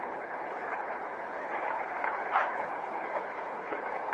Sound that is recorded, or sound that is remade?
remade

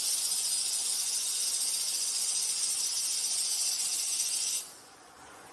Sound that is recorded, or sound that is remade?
remade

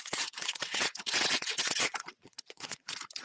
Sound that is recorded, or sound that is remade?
remade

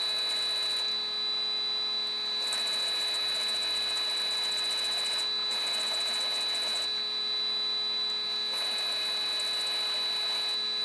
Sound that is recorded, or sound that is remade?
recorded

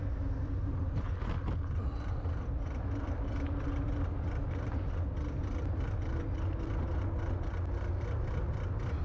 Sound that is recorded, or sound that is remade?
recorded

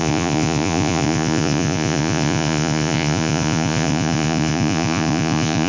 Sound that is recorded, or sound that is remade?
remade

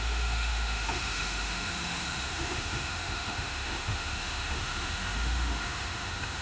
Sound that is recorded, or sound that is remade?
remade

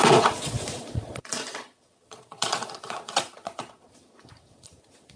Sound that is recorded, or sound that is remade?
remade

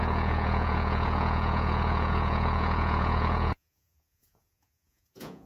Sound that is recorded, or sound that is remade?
remade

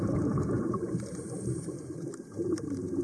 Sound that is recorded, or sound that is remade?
remade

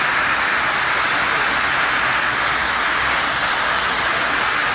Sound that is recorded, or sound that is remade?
recorded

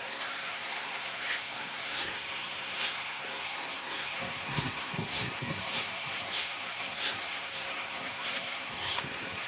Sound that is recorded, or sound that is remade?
remade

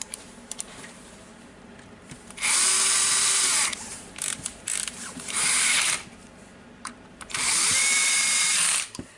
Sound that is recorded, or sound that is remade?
remade